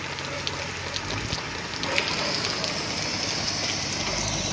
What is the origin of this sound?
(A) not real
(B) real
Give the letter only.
B